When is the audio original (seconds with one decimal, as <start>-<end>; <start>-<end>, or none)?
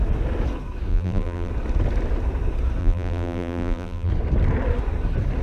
0.0-0.9; 1.5-2.8; 4.1-5.4